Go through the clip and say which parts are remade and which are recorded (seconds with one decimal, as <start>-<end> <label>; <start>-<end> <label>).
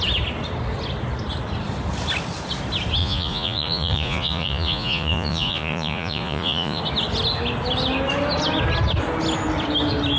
0.0-3.0 recorded; 3.0-6.8 remade; 6.8-10.2 recorded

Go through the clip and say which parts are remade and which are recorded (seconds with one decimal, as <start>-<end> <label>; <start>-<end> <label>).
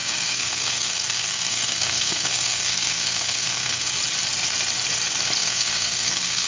0.0-3.9 remade; 3.9-5.4 recorded; 5.4-6.5 remade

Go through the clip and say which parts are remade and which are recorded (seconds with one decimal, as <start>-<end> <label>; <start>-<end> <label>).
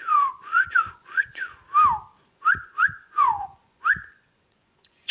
0.0-1.6 remade; 1.6-2.3 recorded; 2.3-5.1 remade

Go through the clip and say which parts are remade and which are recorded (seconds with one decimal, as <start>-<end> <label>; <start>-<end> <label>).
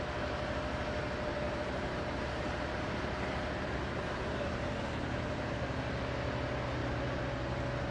0.0-1.3 recorded; 1.3-5.7 remade; 5.7-6.8 recorded; 6.8-7.3 remade; 7.3-7.9 recorded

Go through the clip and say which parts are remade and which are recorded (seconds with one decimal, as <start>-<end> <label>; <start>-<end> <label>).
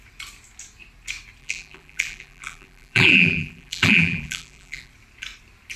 0.0-1.4 recorded; 1.4-4.9 remade; 4.9-5.8 recorded